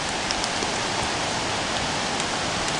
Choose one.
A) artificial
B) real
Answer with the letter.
B